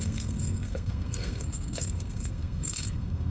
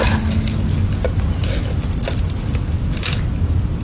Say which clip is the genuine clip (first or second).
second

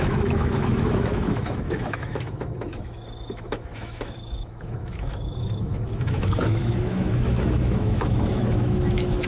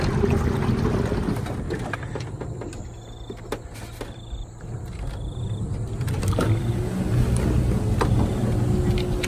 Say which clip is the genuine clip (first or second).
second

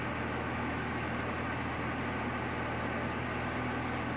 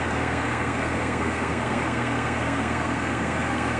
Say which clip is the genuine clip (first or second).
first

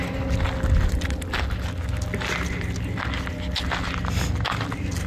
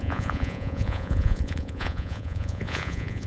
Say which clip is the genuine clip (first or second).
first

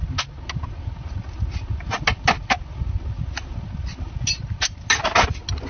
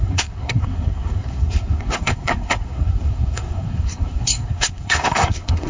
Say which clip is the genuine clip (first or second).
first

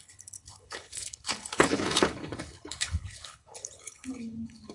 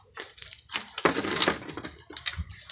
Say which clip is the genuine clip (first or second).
second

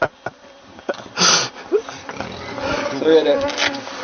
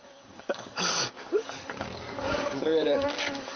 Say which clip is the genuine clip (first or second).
first